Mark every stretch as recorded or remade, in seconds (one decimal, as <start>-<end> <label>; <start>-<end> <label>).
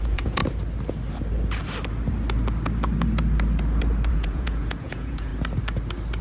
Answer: 0.0-0.4 remade; 0.4-4.1 recorded; 4.1-5.3 remade; 5.3-6.2 recorded